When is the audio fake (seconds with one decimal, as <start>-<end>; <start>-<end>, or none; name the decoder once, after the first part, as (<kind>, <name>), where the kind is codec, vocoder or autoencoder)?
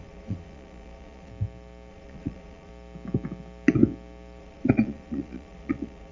0.0-1.3 (vocoder, Vocos); 1.9-2.7; 4.4-6.1